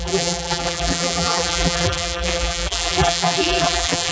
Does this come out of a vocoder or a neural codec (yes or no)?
yes